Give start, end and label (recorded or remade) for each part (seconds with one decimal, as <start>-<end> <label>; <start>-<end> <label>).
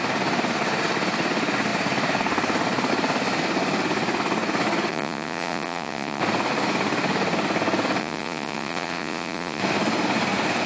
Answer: 0.0-4.9 recorded; 4.9-6.2 remade; 6.2-8.0 recorded; 8.0-9.6 remade; 9.6-10.7 recorded